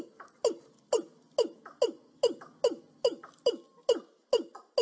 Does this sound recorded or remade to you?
recorded